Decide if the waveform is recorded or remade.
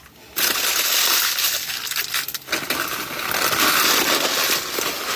recorded